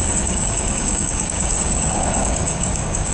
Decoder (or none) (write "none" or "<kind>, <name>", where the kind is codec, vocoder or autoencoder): codec, DAC